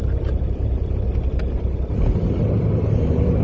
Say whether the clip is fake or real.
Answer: real